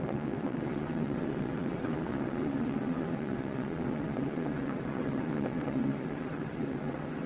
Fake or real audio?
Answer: fake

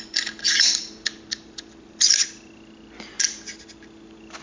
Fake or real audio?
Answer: real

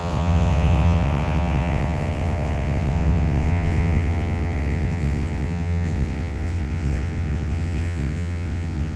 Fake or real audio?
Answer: fake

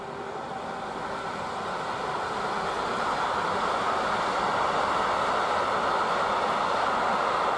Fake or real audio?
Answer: real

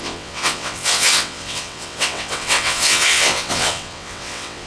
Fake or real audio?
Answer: fake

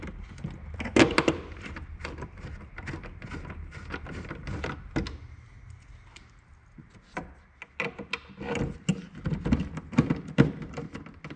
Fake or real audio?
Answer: real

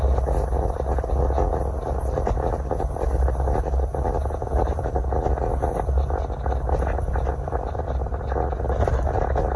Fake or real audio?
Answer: real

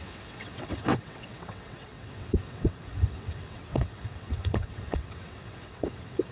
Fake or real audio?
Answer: fake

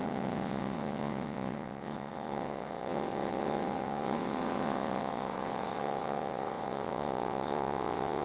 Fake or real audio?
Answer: fake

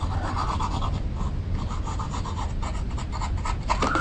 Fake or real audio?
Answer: real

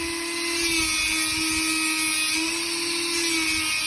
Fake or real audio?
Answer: real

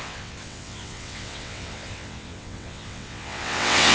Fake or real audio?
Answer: fake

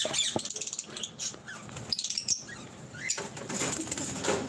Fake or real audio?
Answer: real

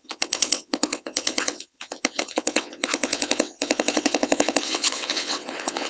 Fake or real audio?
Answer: fake